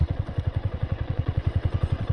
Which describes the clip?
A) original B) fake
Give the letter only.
B